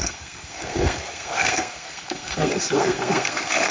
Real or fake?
fake